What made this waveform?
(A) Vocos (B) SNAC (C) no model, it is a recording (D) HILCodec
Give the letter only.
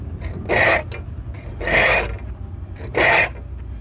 C